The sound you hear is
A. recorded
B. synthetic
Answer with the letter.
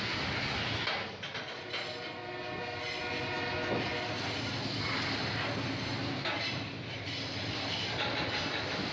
A